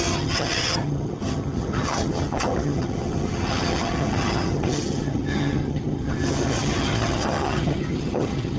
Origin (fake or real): fake